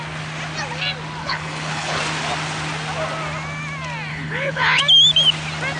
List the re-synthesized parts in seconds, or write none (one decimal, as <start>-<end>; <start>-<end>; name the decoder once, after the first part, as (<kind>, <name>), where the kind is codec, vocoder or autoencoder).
1.2-2.0 (codec, HILCodec); 4.1-4.8